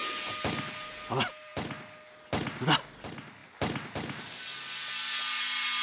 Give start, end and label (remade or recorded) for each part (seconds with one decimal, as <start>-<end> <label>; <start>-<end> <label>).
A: 0.0-5.8 recorded